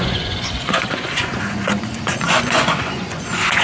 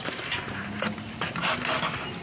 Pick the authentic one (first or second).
second